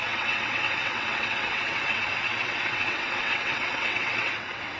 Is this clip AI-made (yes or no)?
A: yes